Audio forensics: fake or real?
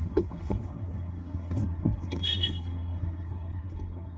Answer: fake